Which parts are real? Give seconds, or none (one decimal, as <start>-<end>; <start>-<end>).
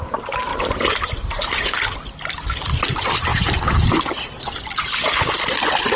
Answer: 0.0-0.5; 1.8-3.3; 4.0-6.0